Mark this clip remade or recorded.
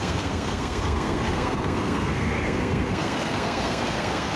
remade